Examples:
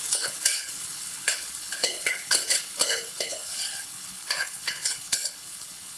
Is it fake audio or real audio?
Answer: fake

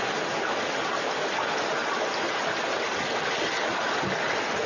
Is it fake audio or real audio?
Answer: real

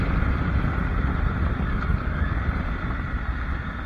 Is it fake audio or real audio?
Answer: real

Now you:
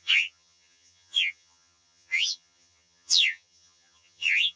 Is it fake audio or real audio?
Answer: fake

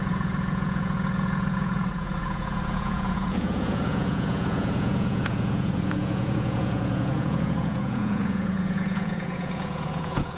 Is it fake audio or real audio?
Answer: fake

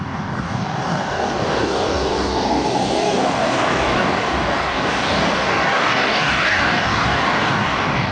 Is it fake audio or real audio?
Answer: fake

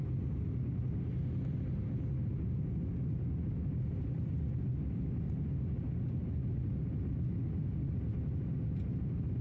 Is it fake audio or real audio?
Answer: real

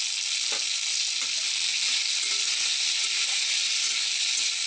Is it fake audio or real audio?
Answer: real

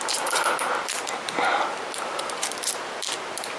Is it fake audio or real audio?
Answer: real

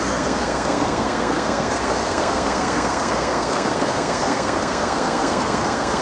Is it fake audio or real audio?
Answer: fake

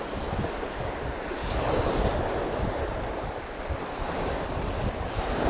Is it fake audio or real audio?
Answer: real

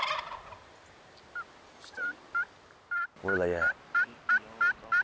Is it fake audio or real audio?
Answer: real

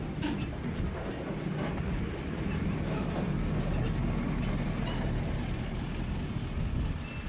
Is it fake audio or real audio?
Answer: real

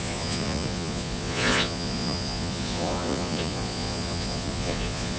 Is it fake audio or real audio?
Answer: fake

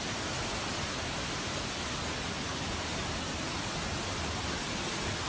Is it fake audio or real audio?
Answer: real